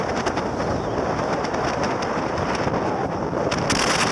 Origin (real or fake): real